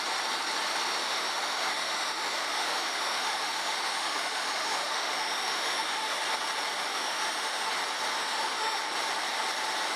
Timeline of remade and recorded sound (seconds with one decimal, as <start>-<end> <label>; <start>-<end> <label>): 0.0-1.0 recorded; 1.0-6.2 remade; 6.2-6.9 recorded; 6.9-7.7 remade; 7.7-8.2 recorded; 8.2-8.8 remade; 8.8-10.0 recorded